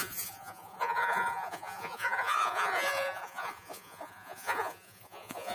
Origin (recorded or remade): remade